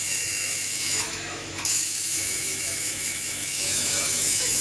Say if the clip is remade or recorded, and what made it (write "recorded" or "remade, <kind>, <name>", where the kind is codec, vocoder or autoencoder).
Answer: remade, autoencoder, DAC-VAE